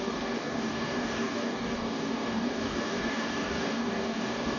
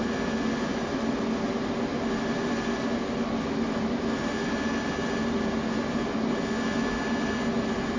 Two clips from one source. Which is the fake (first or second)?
first